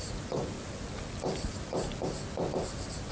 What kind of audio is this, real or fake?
real